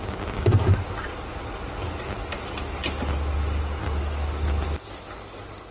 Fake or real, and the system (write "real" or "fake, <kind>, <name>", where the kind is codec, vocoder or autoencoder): real